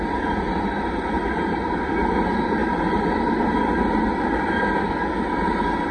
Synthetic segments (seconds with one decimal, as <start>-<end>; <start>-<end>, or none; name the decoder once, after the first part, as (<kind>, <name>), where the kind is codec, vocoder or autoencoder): none